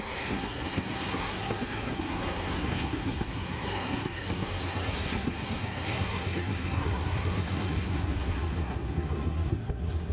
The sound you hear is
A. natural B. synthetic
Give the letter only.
B